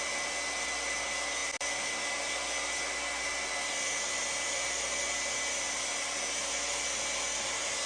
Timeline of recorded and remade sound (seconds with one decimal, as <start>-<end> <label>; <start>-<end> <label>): 0.0-7.9 recorded